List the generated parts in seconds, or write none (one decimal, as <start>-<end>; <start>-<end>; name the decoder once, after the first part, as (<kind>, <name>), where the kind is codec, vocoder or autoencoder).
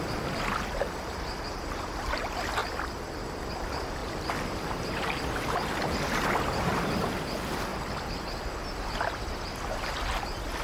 none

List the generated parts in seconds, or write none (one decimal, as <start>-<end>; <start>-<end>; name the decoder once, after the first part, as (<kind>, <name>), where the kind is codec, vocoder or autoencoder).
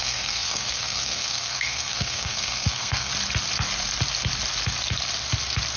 0.0-3.1 (codec, SNAC)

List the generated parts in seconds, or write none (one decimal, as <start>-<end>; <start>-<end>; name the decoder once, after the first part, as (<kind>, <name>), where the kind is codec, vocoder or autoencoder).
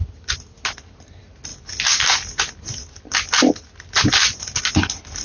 none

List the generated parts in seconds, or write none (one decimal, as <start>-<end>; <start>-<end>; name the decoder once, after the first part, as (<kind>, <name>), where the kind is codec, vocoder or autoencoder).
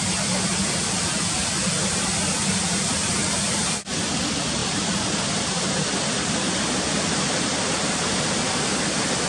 3.2-4.0 (vocoder, BigVGAN v2); 4.6-6.6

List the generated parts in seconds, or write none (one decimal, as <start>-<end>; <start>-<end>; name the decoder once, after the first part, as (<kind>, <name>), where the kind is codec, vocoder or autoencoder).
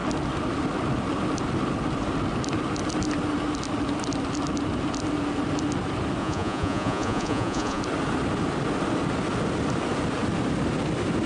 6.2-7.8 (vocoder, Vocos)